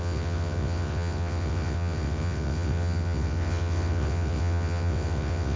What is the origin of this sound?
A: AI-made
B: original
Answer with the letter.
A